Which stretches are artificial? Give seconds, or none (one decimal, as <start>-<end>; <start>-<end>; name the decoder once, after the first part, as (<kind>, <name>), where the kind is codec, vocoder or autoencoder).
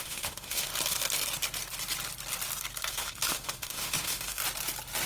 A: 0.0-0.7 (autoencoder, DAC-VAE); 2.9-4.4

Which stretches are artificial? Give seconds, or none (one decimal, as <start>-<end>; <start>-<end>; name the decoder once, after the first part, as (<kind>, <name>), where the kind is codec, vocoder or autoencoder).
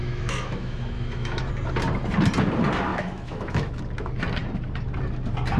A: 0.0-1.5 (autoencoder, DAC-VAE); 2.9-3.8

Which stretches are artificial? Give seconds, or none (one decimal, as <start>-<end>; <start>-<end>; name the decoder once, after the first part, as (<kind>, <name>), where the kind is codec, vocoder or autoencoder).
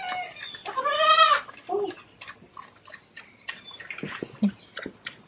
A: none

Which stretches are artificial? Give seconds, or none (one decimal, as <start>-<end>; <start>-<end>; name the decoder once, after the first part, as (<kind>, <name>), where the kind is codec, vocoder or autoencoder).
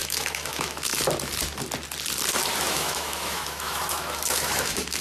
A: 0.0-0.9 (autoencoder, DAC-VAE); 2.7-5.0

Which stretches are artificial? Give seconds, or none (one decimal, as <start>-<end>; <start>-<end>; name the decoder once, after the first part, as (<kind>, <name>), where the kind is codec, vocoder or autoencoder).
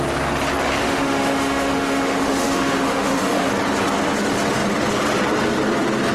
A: 0.8-3.5 (autoencoder, DAC-VAE)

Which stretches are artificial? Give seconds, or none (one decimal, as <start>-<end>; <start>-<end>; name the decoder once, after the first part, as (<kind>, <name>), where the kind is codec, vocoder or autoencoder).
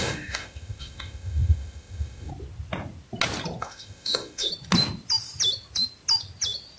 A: 0.0-2.3 (autoencoder, DAC-VAE); 3.6-4.5